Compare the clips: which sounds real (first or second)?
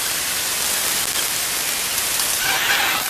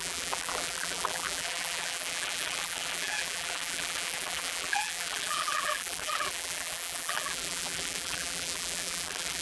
first